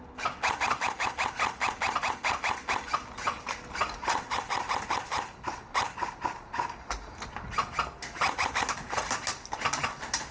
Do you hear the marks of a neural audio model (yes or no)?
no